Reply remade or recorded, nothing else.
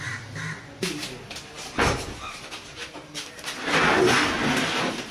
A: recorded